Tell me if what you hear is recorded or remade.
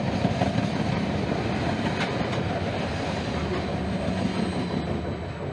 recorded